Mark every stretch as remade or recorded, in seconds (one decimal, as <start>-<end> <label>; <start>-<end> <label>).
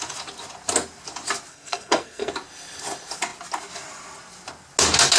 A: 0.0-1.5 recorded; 1.5-2.3 remade; 2.3-5.2 recorded